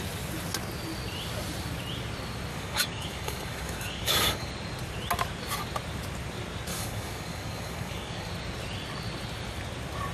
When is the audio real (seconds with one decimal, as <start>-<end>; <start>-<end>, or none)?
0.0-2.5; 4.5-6.7; 8.3-10.1